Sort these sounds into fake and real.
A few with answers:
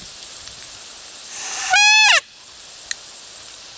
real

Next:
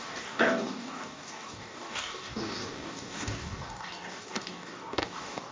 fake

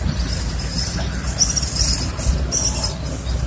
real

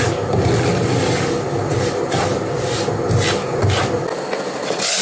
real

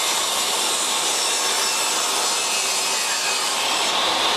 real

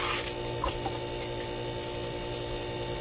real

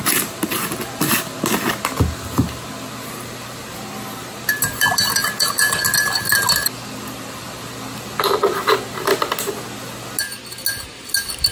real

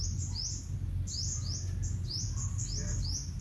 real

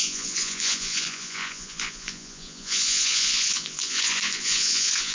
fake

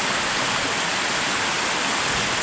real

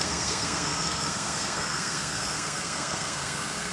fake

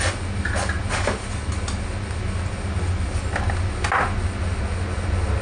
real